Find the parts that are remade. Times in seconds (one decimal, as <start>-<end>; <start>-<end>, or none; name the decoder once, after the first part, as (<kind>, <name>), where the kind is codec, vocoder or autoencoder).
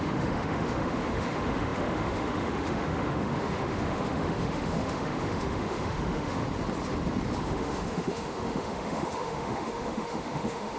0.0-6.4 (autoencoder, DAC-VAE); 7.4-10.8